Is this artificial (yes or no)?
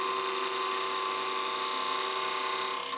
no